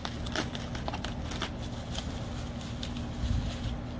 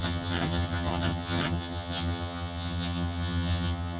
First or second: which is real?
first